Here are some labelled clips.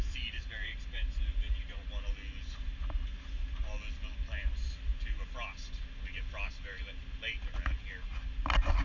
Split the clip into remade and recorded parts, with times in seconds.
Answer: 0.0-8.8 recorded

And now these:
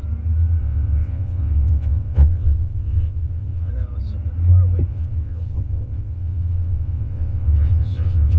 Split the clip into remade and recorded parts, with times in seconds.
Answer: 0.0-0.6 recorded; 0.6-3.7 remade; 3.7-4.9 recorded; 4.9-8.4 remade

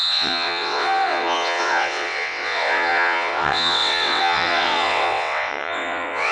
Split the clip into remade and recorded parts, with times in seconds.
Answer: 0.0-6.3 remade

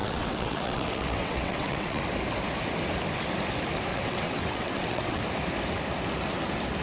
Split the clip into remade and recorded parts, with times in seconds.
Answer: 0.0-2.0 remade; 2.0-3.9 recorded; 3.9-5.2 remade; 5.2-6.8 recorded

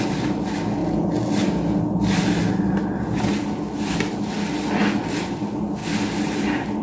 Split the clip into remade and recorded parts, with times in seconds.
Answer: 0.0-6.8 recorded

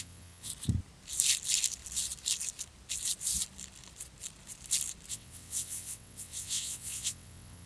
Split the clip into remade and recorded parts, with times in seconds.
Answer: 0.0-0.5 remade; 0.5-5.1 recorded; 5.1-7.7 remade

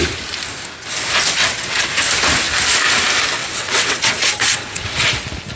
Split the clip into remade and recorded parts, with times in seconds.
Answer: 0.0-1.4 recorded; 1.4-1.9 remade; 1.9-3.4 recorded; 3.4-5.1 remade; 5.1-5.6 recorded

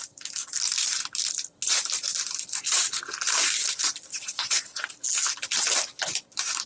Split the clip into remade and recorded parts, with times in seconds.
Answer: 0.0-4.1 recorded; 4.1-4.9 remade; 4.9-6.7 recorded